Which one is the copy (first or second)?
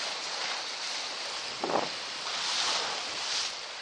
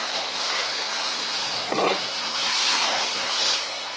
second